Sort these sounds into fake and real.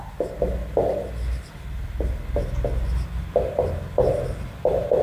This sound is real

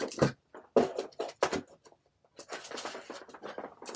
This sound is fake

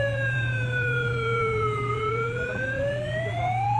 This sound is fake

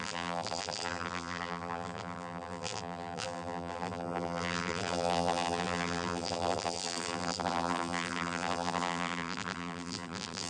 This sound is fake